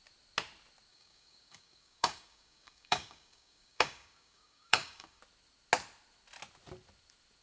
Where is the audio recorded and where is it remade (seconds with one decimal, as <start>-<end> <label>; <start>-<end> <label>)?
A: 0.0-0.9 recorded; 0.9-5.2 remade; 5.2-7.4 recorded